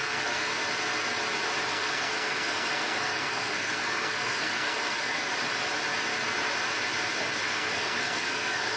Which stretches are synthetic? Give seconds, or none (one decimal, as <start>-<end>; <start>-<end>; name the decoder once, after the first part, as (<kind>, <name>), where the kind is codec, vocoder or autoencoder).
0.0-0.5 (codec, SNAC); 1.7-5.3; 7.4-8.8